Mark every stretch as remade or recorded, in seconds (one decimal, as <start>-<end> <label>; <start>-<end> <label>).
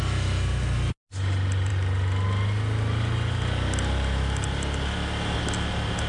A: 0.0-6.1 recorded